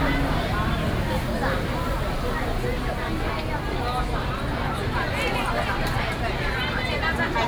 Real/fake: real